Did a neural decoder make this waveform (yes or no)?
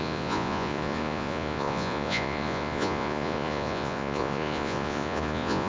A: yes